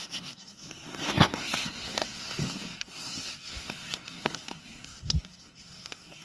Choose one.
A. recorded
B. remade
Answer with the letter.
B